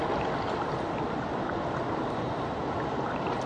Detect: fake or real real